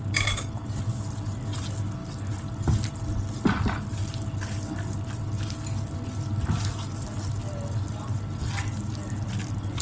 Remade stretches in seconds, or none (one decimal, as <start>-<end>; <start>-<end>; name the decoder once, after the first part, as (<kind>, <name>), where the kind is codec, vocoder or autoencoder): none